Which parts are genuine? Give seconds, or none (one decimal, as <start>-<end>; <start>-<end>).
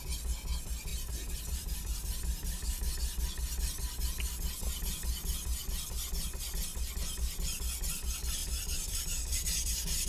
0.0-0.9; 2.9-8.4